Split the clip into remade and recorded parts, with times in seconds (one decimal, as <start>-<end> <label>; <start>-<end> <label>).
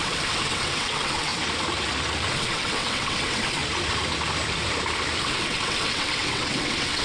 0.0-1.3 remade; 1.3-2.3 recorded; 2.3-3.6 remade; 3.6-5.2 recorded; 5.2-7.0 remade